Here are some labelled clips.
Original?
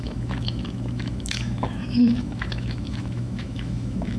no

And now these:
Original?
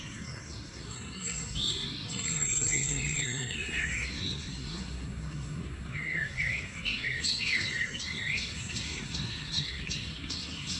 no